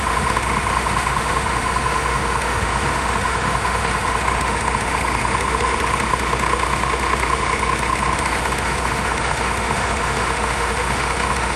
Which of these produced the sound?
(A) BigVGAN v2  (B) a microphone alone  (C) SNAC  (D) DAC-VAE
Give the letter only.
D